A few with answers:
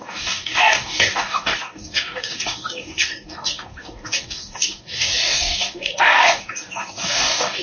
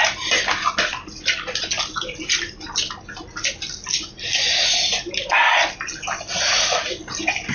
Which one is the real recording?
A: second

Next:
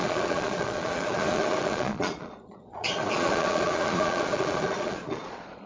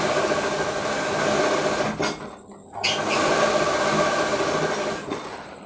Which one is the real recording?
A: second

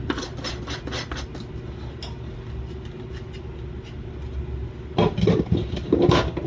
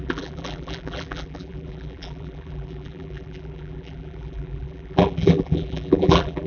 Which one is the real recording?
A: first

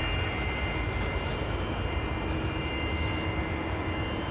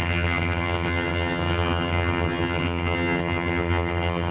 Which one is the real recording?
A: first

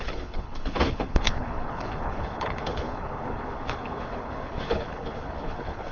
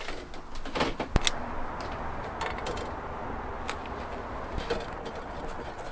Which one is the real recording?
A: second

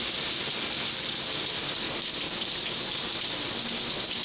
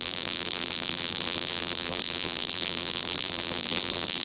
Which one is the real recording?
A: first